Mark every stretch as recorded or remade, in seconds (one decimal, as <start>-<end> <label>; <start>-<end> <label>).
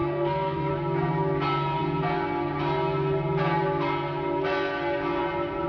0.0-0.7 remade; 0.7-5.7 recorded